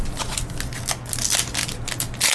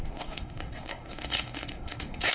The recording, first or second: first